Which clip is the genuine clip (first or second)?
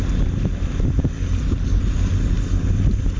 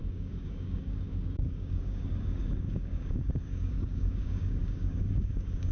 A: first